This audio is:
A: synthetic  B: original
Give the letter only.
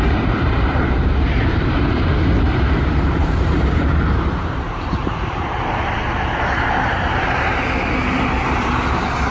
A